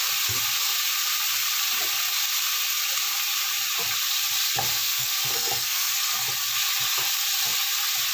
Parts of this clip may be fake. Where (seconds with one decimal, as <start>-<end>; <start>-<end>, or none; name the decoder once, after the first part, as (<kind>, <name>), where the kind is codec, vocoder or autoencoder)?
4.7-5.9 (codec, SNAC)

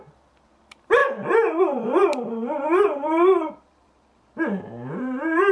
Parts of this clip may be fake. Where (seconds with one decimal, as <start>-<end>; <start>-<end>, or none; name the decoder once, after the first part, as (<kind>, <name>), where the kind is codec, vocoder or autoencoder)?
0.0-1.0 (vocoder, BigVGAN v2); 1.6-5.5

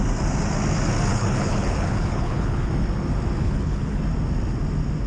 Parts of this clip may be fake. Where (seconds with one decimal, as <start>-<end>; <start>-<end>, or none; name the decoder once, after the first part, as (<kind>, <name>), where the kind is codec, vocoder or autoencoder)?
1.1-2.7 (codec, HILCodec); 3.4-4.0

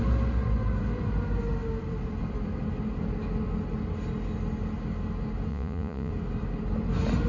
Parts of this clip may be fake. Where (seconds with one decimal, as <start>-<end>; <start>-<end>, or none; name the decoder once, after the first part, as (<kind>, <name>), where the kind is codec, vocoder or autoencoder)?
5.5-6.1 (vocoder, Vocos)

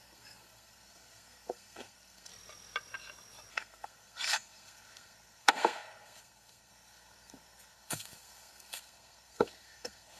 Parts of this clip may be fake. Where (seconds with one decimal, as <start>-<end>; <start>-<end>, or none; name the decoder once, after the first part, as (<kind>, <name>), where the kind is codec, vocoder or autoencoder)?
0.0-2.3 (codec, SNAC); 3.5-10.2

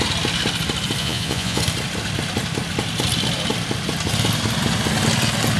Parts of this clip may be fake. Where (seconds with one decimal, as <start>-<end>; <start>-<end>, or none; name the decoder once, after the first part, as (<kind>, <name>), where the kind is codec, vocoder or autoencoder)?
1.0-1.6 (vocoder, Vocos)